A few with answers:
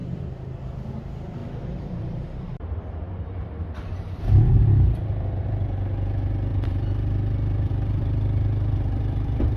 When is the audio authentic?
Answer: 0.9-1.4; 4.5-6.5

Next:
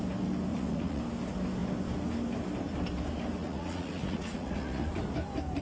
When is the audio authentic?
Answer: 0.0-0.5; 1.0-3.4; 4.9-5.6

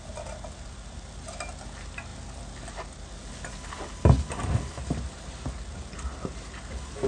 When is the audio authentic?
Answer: 0.0-7.1

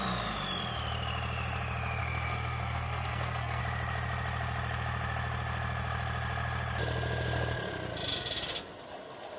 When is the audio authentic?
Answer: 0.0-2.0; 3.6-9.4

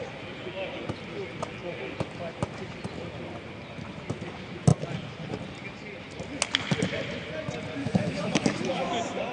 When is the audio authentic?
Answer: 0.0-7.8; 8.9-9.3